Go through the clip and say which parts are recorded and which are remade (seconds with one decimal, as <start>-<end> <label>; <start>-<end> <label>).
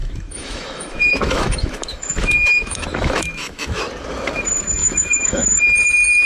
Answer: 0.0-3.8 remade; 3.8-4.8 recorded; 4.8-5.6 remade; 5.6-6.3 recorded